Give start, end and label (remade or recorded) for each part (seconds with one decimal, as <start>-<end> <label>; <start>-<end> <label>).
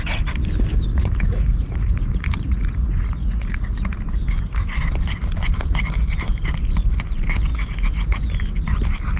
0.0-0.9 recorded; 0.9-4.0 remade; 4.0-7.5 recorded; 7.5-8.2 remade; 8.2-9.2 recorded